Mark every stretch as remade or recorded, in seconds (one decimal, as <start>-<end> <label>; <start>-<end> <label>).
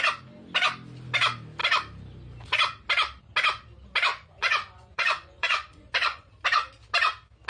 0.0-4.1 recorded; 4.1-6.3 remade; 6.3-7.5 recorded